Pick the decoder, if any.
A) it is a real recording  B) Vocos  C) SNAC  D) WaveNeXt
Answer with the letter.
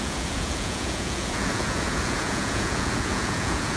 B